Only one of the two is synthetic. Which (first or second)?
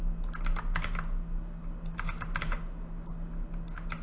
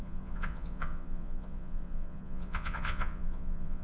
second